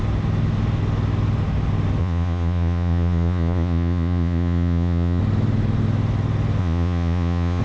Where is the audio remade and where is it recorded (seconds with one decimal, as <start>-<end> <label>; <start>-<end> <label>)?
0.0-2.0 recorded; 2.0-5.2 remade; 5.2-6.6 recorded; 6.6-7.6 remade